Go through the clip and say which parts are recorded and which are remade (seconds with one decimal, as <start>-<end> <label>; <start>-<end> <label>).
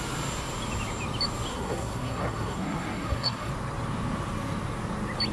0.0-1.5 recorded; 1.5-3.5 remade; 3.5-5.3 recorded